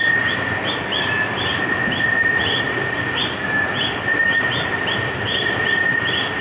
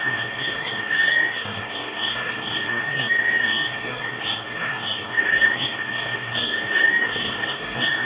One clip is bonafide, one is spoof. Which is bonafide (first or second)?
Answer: first